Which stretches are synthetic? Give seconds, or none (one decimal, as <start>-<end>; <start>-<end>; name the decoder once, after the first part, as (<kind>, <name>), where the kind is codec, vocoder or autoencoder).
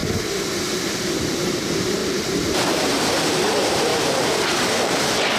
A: 2.0-3.1 (vocoder, BigVGAN v2); 3.9-5.0